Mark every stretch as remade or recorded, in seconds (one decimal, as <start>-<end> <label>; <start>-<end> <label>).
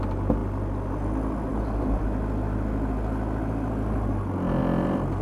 0.0-5.2 recorded